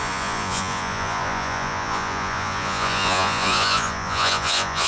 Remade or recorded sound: remade